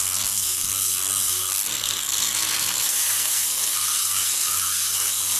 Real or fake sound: fake